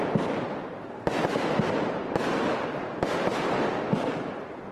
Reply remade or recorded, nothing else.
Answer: recorded